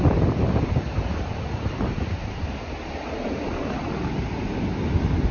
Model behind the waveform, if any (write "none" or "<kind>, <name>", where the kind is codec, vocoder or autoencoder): none